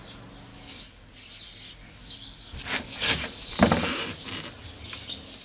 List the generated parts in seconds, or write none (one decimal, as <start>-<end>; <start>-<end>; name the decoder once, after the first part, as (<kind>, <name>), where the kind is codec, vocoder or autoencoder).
0.5-1.1 (codec, DAC); 1.8-3.1